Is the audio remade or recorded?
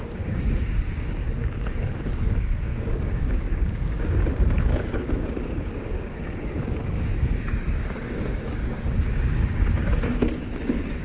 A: remade